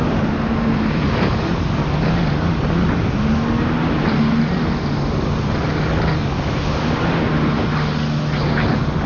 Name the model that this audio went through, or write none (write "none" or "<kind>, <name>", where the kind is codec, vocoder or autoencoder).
none